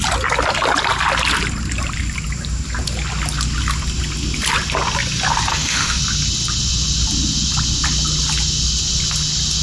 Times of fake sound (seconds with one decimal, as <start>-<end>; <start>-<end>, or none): 5.5-6.0